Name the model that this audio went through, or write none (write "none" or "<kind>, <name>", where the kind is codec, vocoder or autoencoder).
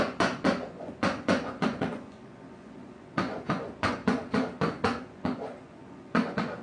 vocoder, Vocos